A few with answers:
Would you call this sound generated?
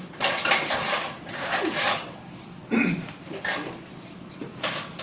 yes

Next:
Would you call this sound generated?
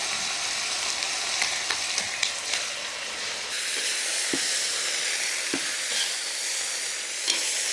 yes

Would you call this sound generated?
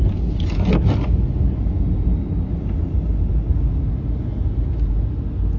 no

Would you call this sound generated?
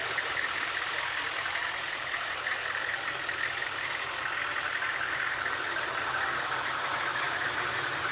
no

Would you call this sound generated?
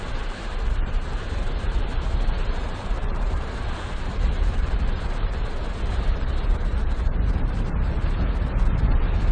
yes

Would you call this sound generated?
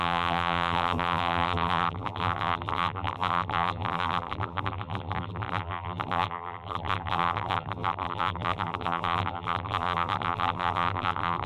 yes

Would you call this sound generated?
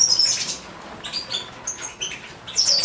no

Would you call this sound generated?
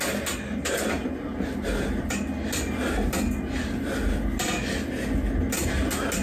no